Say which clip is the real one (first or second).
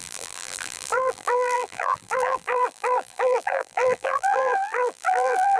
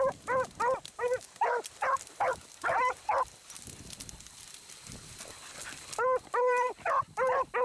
second